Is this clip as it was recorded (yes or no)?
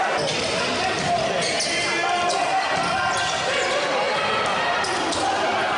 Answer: yes